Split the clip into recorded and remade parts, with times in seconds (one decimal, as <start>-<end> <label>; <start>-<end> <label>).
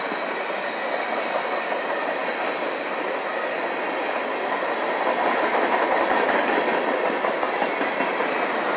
0.0-8.8 recorded